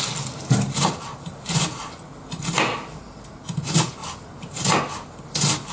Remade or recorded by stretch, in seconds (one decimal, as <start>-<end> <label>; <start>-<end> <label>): 0.0-5.7 recorded